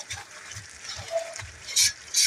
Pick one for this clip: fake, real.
fake